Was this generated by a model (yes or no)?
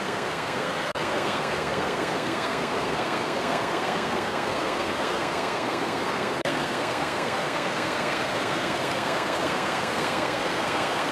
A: yes